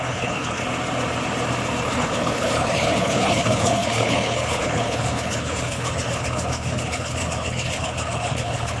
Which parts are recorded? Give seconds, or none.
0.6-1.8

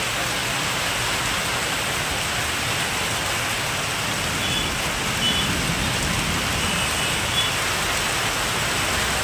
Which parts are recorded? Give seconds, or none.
0.0-9.2

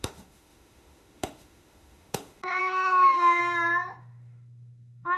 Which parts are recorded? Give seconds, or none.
3.4-4.0

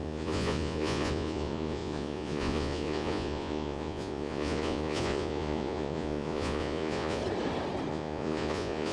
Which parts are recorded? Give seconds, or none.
7.2-7.9